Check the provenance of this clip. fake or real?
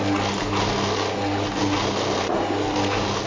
real